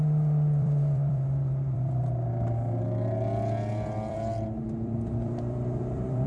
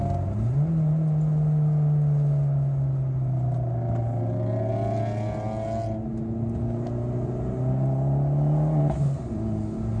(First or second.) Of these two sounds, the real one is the second